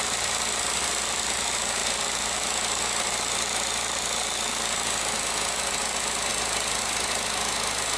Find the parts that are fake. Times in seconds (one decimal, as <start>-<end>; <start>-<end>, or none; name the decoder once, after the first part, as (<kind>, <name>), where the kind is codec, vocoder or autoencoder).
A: none